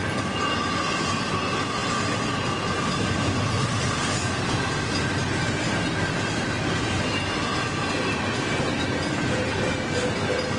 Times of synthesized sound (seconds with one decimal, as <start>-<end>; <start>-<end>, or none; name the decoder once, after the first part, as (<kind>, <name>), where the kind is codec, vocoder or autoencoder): none